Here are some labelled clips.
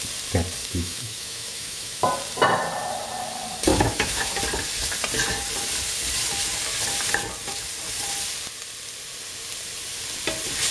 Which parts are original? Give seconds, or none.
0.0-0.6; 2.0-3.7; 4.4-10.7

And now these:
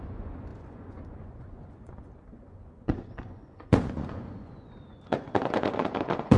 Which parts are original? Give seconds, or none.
none

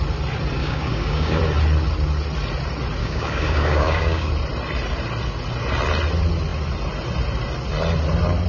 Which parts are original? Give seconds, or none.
0.0-0.6; 1.4-3.0; 4.3-8.5

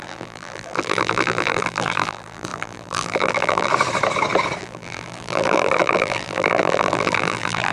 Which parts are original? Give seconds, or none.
3.7-4.6

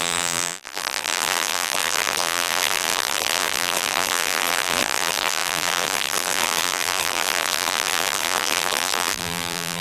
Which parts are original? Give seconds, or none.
none

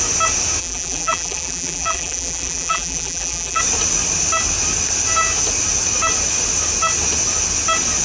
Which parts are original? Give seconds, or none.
0.0-0.6; 3.6-8.0

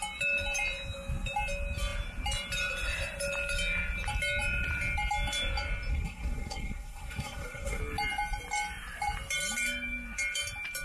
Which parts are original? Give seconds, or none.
0.0-5.9; 7.8-10.8

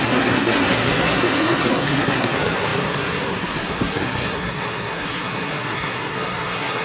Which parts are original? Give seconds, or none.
none